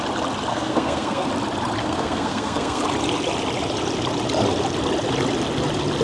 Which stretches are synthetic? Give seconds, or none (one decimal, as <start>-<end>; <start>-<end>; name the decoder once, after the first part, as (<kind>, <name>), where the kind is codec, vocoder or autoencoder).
0.5-1.3 (codec, SNAC); 1.8-2.8